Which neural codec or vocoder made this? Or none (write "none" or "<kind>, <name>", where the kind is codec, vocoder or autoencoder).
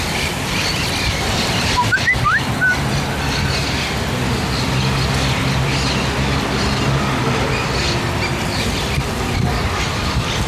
none